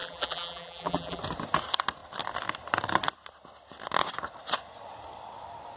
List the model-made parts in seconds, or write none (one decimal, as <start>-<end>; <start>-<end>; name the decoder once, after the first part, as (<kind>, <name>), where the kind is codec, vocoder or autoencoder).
0.0-1.2 (vocoder, BigVGAN v2)